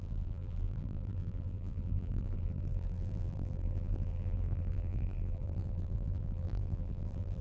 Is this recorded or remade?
remade